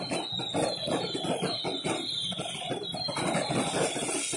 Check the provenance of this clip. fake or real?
real